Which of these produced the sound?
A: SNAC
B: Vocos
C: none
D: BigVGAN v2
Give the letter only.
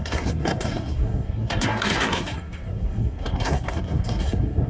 A